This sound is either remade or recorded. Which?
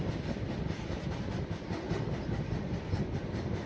recorded